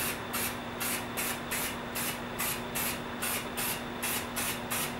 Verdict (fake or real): real